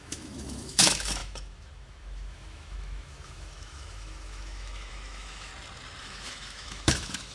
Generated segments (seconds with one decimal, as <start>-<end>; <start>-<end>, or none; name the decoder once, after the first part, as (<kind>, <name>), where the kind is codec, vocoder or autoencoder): 0.0-5.5 (autoencoder, DAC-VAE); 6.0-7.3